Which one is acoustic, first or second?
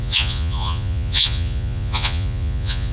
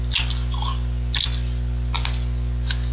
second